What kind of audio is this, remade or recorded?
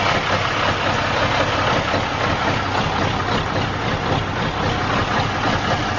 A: recorded